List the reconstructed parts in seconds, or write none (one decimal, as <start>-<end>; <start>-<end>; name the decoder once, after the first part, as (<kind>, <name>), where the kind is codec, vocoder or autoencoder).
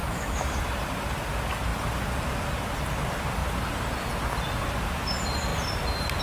0.0-0.6 (autoencoder, DAC-VAE)